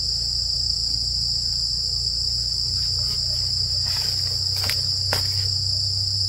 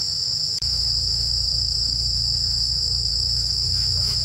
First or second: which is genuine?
first